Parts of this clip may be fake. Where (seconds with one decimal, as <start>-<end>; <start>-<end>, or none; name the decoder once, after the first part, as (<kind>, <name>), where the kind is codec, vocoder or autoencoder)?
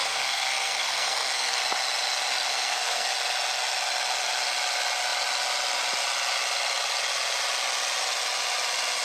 0.0-1.6 (codec, SNAC); 2.5-3.1